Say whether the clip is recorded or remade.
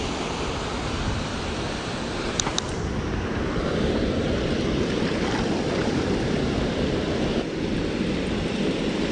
remade